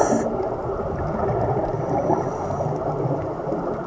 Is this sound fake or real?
real